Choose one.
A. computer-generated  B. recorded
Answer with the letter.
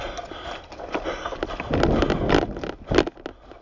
B